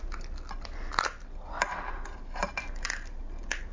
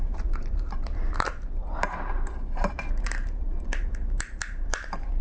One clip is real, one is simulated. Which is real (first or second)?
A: first